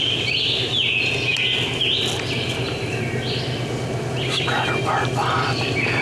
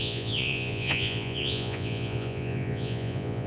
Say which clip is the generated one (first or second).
second